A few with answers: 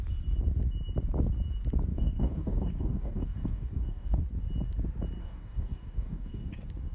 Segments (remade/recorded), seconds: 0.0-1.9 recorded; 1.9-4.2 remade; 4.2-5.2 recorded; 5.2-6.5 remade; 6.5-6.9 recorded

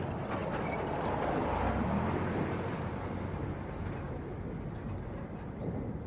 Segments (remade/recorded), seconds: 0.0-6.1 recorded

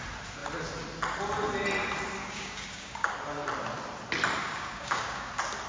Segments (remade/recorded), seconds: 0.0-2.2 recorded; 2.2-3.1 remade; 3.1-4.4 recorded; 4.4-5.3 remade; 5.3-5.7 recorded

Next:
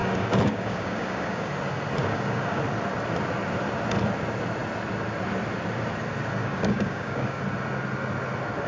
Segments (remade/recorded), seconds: 0.0-1.5 remade; 1.5-2.0 recorded; 2.0-2.6 remade; 2.6-6.4 recorded; 6.4-7.4 remade; 7.4-8.7 recorded

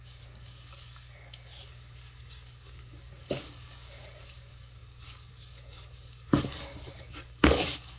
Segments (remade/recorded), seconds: 0.0-8.0 remade

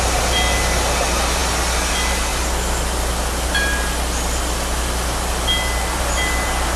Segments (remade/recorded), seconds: 0.0-6.8 recorded

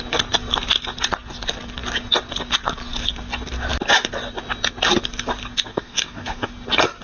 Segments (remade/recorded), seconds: 0.0-5.7 recorded; 5.7-6.5 remade; 6.5-7.0 recorded

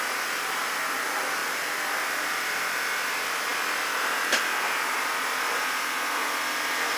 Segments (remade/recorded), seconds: 0.0-7.0 recorded